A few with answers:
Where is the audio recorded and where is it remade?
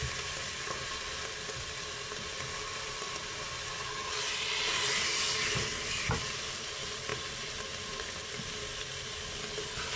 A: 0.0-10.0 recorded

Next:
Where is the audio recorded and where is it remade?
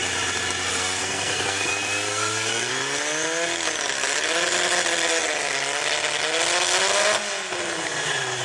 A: 0.0-0.7 recorded; 0.7-1.7 remade; 1.7-2.1 recorded; 2.1-2.7 remade; 2.7-8.4 recorded